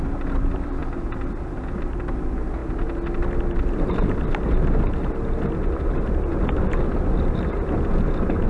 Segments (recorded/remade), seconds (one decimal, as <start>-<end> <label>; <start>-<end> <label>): 0.0-0.8 remade; 0.8-2.1 recorded; 2.1-2.6 remade; 2.6-6.3 recorded; 6.3-8.5 remade